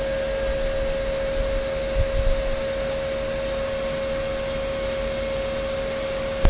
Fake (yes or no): no